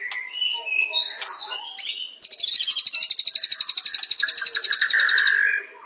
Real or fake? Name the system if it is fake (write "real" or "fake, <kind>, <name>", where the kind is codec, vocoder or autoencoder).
real